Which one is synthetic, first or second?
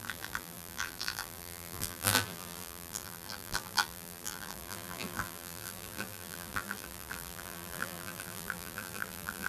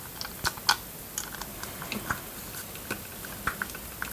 first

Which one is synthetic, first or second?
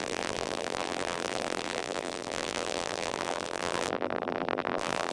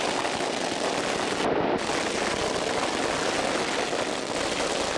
first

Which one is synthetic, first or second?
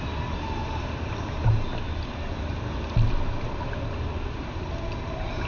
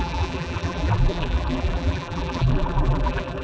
second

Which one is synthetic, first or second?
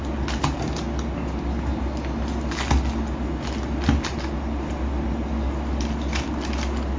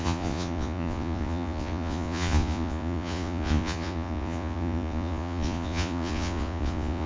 second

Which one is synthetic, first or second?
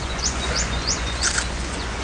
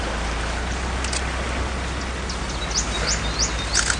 first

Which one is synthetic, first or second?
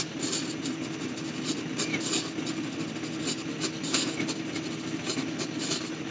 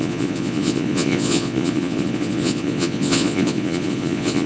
second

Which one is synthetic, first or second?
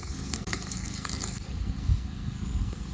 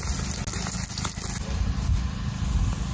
first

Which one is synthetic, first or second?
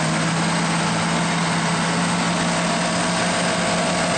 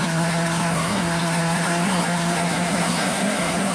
second